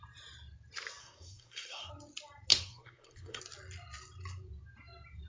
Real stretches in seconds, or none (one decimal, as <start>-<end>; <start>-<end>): 0.0-1.0; 1.9-2.5; 3.4-5.3